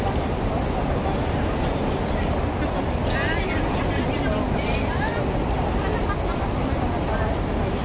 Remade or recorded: recorded